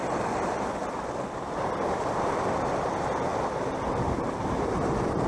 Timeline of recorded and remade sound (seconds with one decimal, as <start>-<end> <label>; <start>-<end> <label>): 0.0-5.3 recorded